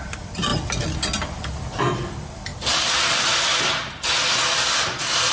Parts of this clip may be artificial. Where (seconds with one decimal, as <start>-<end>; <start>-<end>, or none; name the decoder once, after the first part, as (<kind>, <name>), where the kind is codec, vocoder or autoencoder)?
none